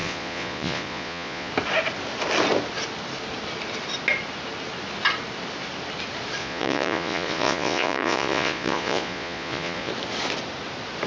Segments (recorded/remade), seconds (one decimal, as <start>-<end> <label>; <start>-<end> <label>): 0.0-1.5 remade; 1.5-6.4 recorded; 6.4-9.9 remade; 9.9-11.1 recorded